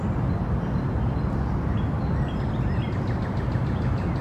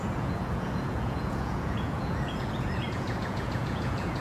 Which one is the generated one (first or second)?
second